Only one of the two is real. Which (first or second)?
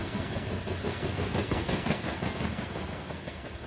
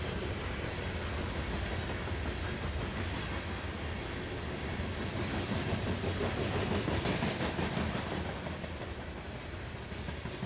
second